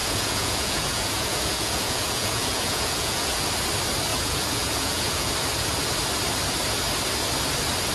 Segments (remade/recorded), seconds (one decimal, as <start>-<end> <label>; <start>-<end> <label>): 0.0-3.4 remade; 3.4-4.1 recorded; 4.1-5.3 remade; 5.3-7.9 recorded